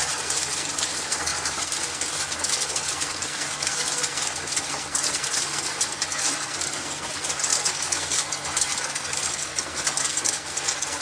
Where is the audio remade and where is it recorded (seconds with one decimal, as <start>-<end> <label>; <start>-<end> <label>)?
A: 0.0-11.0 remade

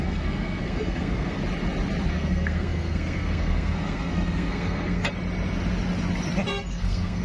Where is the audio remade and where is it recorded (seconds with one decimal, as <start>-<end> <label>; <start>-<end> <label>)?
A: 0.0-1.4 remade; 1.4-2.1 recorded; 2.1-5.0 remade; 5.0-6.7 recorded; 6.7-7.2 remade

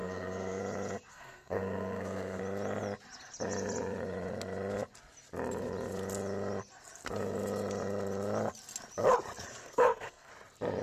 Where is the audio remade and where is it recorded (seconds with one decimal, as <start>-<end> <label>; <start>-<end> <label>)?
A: 0.0-0.6 remade; 0.6-1.1 recorded; 1.1-2.4 remade; 2.4-9.6 recorded; 9.6-10.3 remade; 10.3-10.8 recorded

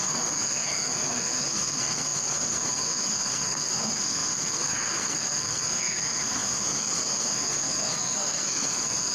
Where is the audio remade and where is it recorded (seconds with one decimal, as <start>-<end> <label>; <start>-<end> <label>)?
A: 0.0-9.1 remade

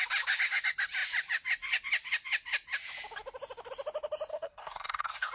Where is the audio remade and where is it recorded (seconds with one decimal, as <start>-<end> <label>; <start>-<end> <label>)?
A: 0.0-4.3 recorded; 4.3-5.3 remade

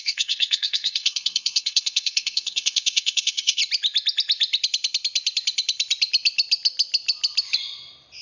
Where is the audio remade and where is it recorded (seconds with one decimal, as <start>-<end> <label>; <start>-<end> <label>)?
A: 0.0-3.6 remade; 3.6-8.2 recorded

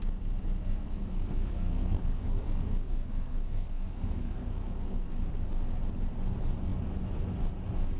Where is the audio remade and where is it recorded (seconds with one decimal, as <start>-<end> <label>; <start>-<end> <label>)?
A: 0.0-0.6 recorded; 0.6-5.1 remade; 5.1-8.0 recorded